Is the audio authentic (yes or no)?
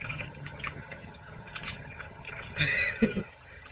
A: no